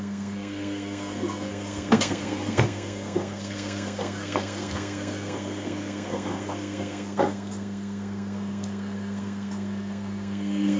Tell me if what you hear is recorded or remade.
remade